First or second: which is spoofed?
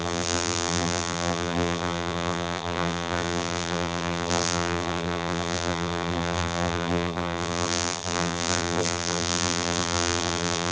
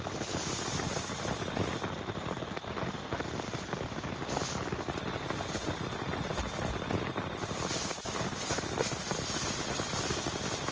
first